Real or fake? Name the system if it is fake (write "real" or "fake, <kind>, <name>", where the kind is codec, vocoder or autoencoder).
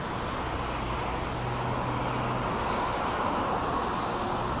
real